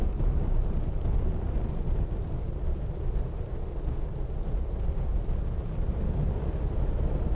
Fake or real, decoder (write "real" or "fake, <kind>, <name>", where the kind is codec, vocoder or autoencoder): real